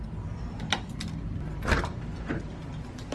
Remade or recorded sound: recorded